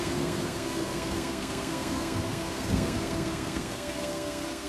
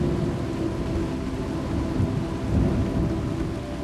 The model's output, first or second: first